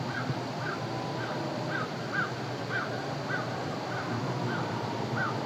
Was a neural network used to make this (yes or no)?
no